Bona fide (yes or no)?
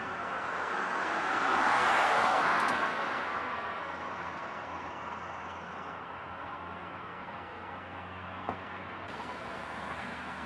no